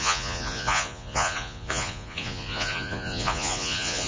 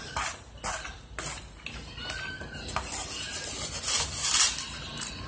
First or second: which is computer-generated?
first